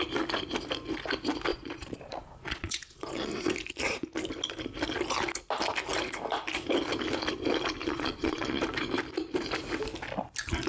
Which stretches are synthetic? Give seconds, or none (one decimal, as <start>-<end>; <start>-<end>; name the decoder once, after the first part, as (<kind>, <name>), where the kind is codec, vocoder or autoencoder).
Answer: 1.5-3.3 (vocoder, Vocos); 7.8-8.6